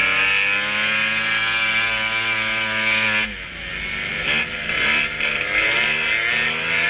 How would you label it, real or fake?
real